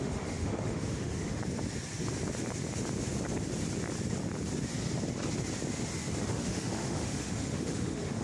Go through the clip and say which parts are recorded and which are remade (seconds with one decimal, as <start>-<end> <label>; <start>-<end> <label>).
0.0-1.4 remade; 1.4-6.3 recorded; 6.3-8.2 remade